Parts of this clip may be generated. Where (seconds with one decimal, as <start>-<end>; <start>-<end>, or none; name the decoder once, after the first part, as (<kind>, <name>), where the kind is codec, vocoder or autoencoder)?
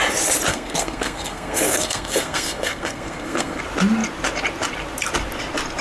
0.5-3.6 (codec, SNAC)